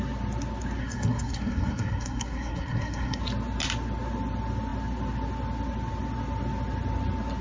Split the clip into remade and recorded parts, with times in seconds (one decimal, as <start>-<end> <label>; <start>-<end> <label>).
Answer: 0.0-0.8 recorded; 0.8-3.2 remade; 3.2-7.4 recorded